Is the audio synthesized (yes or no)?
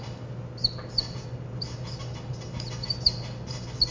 no